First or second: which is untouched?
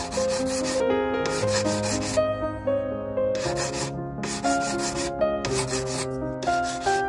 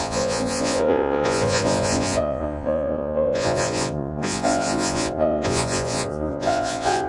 first